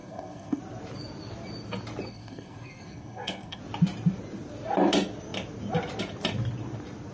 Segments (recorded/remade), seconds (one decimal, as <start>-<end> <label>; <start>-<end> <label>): 0.0-0.6 remade; 0.6-2.1 recorded; 2.1-3.6 remade; 3.6-7.1 recorded